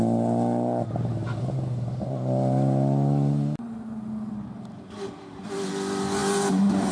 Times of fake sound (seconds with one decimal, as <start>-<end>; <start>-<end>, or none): none